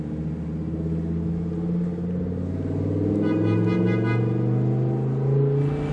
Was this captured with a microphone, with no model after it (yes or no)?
yes